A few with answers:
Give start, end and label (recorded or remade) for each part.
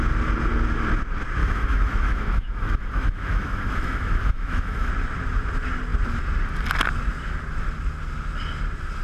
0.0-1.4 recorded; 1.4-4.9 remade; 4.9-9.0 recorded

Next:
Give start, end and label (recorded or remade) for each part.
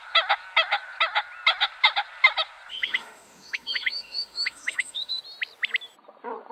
0.0-2.7 recorded; 2.7-5.2 remade; 5.2-6.5 recorded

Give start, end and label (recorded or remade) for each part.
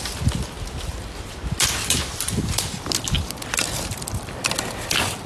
0.0-1.8 recorded; 1.8-2.6 remade; 2.6-5.3 recorded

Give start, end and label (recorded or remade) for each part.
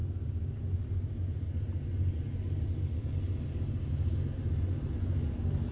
0.0-5.7 recorded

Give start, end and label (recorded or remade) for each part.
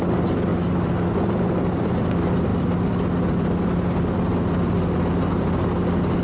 0.0-6.2 recorded